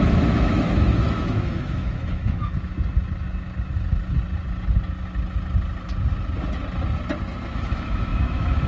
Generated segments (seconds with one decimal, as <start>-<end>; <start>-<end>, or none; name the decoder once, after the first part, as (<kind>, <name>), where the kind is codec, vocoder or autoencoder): 0.0-2.7 (autoencoder, DAC-VAE); 7.5-8.7